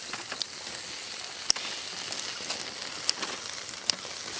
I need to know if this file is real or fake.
real